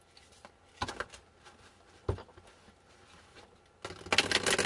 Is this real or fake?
real